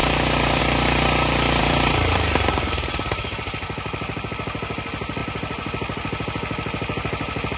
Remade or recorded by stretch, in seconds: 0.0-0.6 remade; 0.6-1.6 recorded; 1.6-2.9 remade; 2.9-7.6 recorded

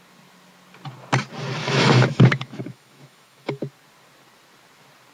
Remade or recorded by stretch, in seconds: 0.0-1.6 recorded; 1.6-3.6 remade; 3.6-5.1 recorded

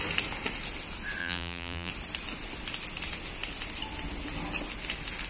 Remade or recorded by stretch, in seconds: 0.0-1.2 recorded; 1.2-1.9 remade; 1.9-5.3 recorded

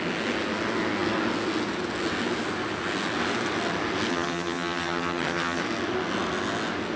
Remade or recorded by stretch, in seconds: 0.0-4.1 recorded; 4.1-5.6 remade; 5.6-7.0 recorded

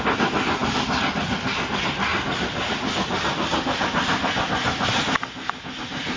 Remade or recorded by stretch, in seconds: 0.0-6.2 recorded

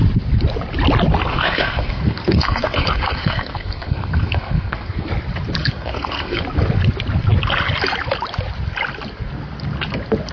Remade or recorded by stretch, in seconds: 0.0-1.3 recorded; 1.3-5.1 remade; 5.1-5.6 recorded; 5.6-6.4 remade; 6.4-10.3 recorded

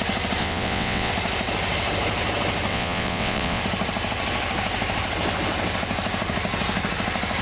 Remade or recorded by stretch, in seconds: 0.0-0.4 recorded; 0.4-1.1 remade; 1.1-2.7 recorded; 2.7-3.6 remade; 3.6-7.4 recorded

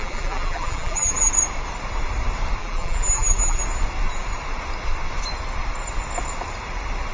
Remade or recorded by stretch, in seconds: 0.0-1.3 remade; 1.3-2.6 recorded; 2.6-3.6 remade; 3.6-7.1 recorded